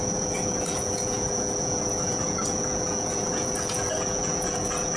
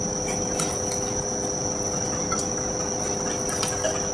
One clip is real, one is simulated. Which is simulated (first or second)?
first